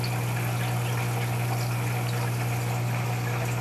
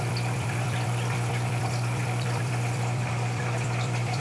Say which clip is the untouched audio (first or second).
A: first